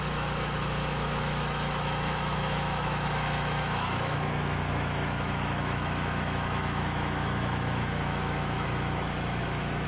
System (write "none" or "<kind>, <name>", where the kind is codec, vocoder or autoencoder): autoencoder, DAC-VAE